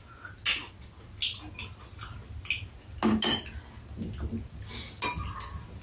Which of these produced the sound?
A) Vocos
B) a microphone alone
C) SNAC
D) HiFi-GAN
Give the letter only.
B